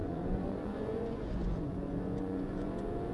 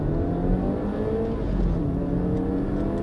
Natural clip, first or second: second